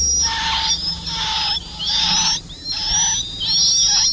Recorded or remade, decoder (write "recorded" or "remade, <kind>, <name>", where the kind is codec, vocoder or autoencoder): recorded